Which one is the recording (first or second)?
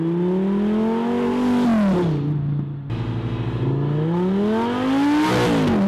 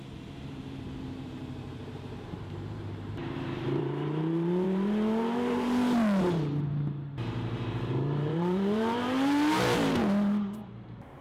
first